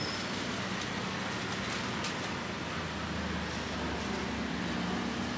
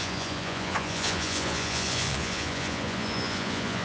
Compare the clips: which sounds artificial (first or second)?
second